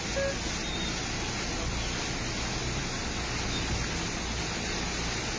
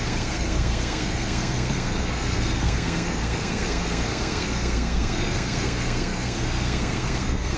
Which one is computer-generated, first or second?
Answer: second